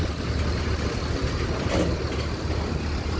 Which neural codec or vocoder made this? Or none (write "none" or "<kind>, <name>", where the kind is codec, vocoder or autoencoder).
none